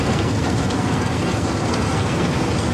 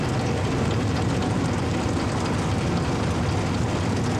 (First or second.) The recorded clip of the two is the second